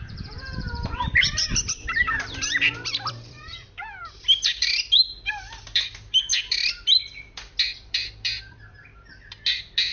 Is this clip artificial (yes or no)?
yes